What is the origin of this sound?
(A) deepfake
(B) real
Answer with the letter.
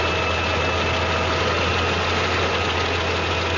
B